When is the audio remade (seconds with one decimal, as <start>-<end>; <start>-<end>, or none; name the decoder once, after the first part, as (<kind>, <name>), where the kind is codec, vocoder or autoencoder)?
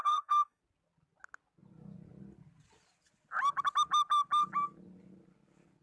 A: 0.0-0.6 (codec, DAC)